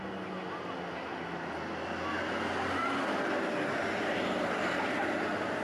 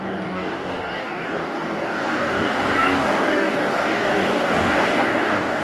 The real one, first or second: first